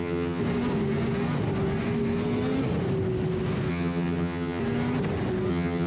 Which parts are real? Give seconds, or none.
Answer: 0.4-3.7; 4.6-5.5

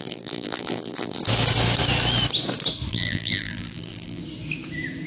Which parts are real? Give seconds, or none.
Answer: 1.2-2.9; 4.2-5.1

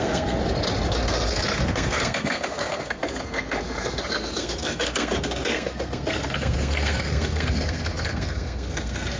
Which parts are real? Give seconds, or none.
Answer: 0.4-0.9